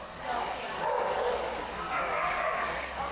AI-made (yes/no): yes